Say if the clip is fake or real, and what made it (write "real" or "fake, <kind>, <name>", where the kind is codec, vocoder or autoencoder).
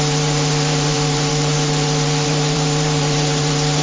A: fake, vocoder, BigVGAN v2